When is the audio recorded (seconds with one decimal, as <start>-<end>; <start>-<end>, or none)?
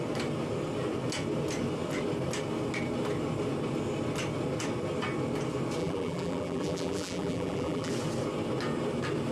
0.0-5.8; 7.9-9.3